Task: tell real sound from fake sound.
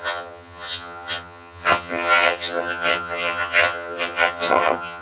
fake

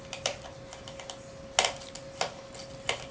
real